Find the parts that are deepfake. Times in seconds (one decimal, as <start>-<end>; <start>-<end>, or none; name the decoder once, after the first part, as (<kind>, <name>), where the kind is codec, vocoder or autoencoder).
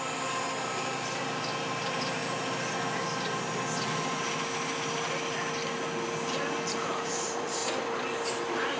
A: 0.0-2.2 (vocoder, BigVGAN v2); 6.7-7.6; 8.3-8.8